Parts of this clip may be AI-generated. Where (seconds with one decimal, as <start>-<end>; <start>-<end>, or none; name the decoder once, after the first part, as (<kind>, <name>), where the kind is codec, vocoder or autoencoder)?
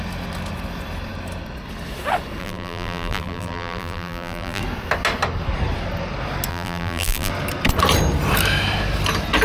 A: 2.4-4.6 (vocoder, BigVGAN v2); 6.5-7.3